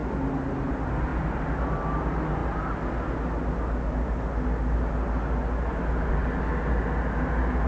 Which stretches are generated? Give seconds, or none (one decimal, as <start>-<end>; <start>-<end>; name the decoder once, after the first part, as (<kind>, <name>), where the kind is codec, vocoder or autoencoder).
none